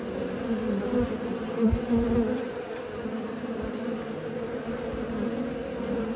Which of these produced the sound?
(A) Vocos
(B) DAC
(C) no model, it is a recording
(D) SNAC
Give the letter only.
C